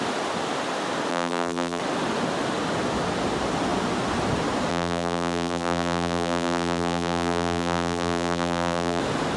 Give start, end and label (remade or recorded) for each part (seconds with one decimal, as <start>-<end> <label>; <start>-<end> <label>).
0.0-1.1 recorded; 1.1-1.8 remade; 1.8-4.7 recorded; 4.7-9.0 remade; 9.0-9.4 recorded